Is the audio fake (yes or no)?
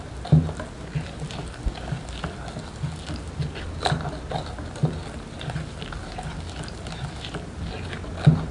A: no